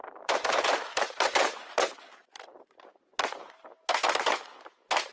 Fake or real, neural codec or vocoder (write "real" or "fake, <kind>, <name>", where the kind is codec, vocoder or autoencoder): fake, vocoder, BigVGAN v2